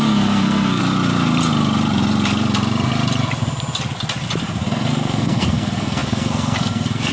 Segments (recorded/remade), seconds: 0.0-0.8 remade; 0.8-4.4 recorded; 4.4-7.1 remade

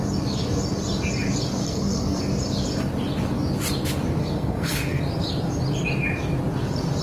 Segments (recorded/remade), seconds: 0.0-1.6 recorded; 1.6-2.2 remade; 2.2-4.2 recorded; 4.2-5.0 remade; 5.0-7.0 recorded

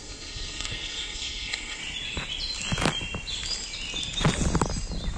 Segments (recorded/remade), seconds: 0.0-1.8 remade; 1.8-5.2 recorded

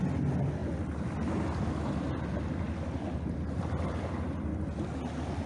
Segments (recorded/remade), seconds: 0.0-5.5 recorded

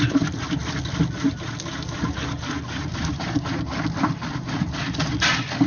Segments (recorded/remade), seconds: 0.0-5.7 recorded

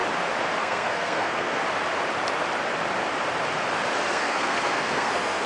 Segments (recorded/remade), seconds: 0.0-0.6 recorded; 0.6-1.6 remade; 1.6-4.1 recorded; 4.1-5.5 remade

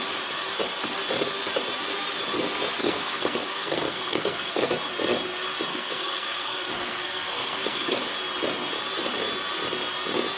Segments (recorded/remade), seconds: 0.0-2.8 recorded; 2.8-4.7 remade; 4.7-5.7 recorded; 5.7-8.0 remade; 8.0-10.4 recorded

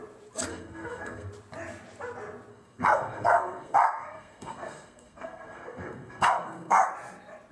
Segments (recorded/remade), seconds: 0.0-0.5 recorded; 0.5-1.3 remade; 1.3-2.5 recorded; 2.5-6.9 remade; 6.9-7.5 recorded